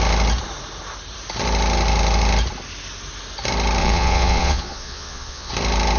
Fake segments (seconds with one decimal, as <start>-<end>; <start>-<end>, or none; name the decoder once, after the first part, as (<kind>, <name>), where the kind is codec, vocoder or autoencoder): 3.8-5.5 (vocoder, Vocos)